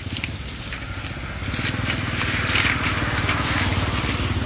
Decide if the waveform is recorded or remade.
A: recorded